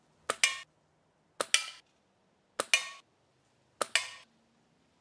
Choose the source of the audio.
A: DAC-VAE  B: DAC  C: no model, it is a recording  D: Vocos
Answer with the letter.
C